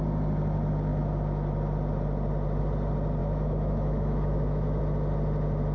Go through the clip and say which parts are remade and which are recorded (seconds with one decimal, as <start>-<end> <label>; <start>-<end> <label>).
0.0-3.2 recorded; 3.2-4.8 remade; 4.8-5.7 recorded